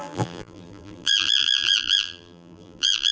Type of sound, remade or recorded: remade